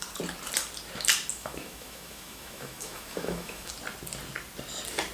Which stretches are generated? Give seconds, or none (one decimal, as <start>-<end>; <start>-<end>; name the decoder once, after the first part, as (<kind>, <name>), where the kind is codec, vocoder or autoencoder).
1.3-3.7 (autoencoder, DAC-VAE)